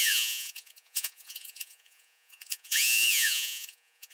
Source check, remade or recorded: remade